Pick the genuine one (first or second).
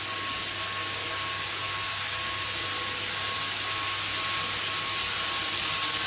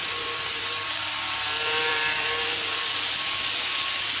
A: first